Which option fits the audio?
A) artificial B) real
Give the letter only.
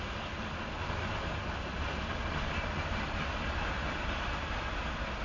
B